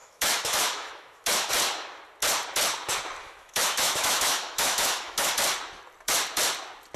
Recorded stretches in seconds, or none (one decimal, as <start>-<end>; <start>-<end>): 1.5-3.2; 5.3-7.0